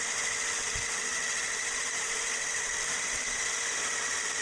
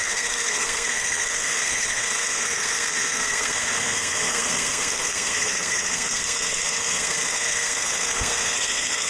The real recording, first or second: first